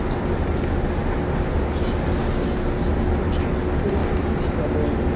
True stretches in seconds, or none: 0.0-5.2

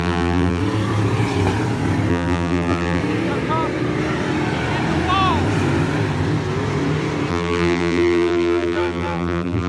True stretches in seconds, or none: 0.6-2.1; 3.0-7.3

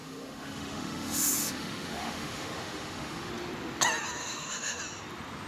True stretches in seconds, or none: 3.3-4.2; 4.8-5.5

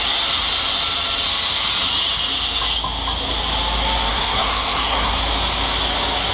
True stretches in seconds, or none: 0.0-4.1; 5.2-6.3

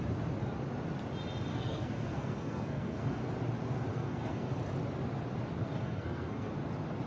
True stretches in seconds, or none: 0.0-1.5; 3.2-3.9; 4.5-5.6; 6.5-7.1

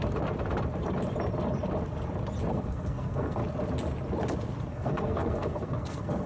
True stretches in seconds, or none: 0.0-2.5; 3.4-4.7

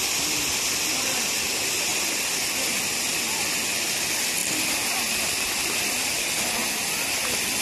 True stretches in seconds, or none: 0.0-7.6